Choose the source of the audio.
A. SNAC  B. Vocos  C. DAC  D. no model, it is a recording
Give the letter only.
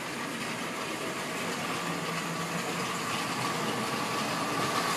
D